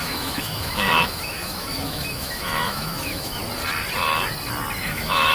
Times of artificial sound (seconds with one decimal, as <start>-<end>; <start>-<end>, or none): 0.0-3.4; 4.8-5.3